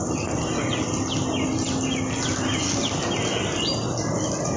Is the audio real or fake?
real